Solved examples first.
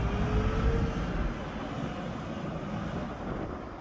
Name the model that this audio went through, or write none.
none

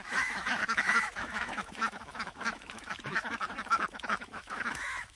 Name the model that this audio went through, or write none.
autoencoder, DAC-VAE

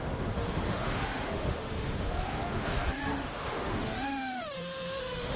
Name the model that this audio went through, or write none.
autoencoder, DAC-VAE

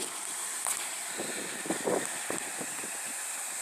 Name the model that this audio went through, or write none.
none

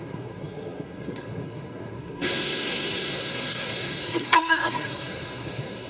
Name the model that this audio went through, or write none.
codec, SNAC